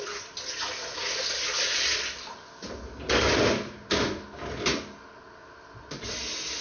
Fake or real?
real